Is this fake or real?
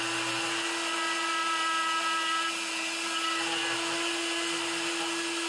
real